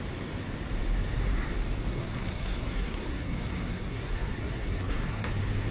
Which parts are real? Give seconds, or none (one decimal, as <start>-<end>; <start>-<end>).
0.0-1.9; 5.3-5.7